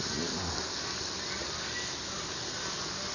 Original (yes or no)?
yes